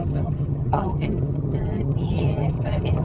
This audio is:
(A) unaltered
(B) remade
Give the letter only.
B